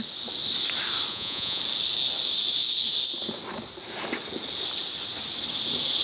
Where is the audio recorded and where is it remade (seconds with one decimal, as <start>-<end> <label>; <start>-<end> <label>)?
0.0-1.1 recorded; 1.1-1.6 remade; 1.6-6.0 recorded